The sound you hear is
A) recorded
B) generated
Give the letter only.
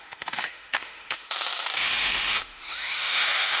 B